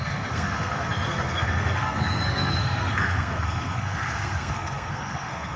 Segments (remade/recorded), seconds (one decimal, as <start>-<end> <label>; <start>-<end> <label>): 0.0-5.6 remade